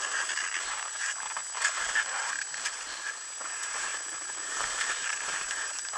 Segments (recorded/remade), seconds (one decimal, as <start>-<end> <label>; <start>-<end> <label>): 0.0-6.0 recorded